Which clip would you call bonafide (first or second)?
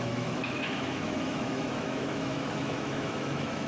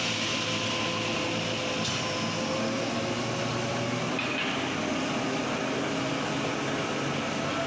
second